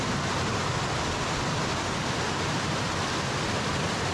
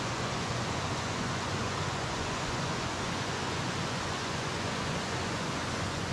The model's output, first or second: second